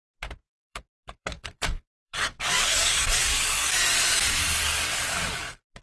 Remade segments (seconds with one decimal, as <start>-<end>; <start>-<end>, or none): 0.5-3.8; 4.6-5.8